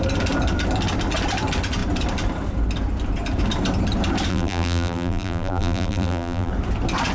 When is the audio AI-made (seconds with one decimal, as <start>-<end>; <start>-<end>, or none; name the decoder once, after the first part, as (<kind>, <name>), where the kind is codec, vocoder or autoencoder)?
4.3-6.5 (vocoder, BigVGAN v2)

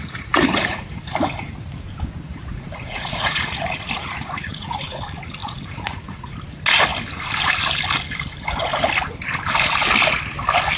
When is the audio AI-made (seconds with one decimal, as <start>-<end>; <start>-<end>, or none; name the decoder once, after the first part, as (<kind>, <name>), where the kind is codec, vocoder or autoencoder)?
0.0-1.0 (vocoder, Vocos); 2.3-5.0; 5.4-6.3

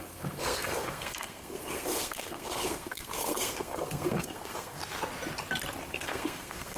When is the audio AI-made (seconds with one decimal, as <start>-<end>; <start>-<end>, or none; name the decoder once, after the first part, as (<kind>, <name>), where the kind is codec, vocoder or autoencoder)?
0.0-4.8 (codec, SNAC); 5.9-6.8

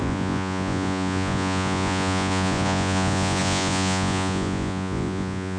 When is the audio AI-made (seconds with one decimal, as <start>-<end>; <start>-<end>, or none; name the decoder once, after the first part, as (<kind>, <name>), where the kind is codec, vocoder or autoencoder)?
0.0-5.6 (vocoder, Vocos)

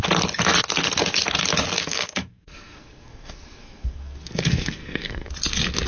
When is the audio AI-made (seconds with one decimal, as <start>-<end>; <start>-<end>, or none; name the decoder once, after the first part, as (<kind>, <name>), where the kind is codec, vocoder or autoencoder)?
1.8-5.3 (codec, SNAC)

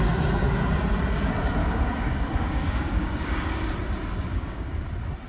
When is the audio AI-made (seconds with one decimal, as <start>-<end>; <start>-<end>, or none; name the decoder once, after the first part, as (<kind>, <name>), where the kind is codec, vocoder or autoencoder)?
1.6-3.6 (codec, DAC); 4.3-4.8